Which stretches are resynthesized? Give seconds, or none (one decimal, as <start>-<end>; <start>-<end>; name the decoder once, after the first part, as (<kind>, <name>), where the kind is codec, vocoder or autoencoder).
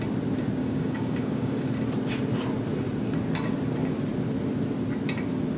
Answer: 0.6-1.7 (codec, DAC)